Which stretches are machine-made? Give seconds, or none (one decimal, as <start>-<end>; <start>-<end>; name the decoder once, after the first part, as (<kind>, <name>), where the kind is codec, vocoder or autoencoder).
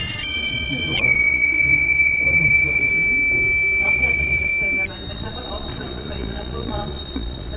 0.0-2.9 (vocoder, Vocos); 3.8-4.5; 5.1-7.6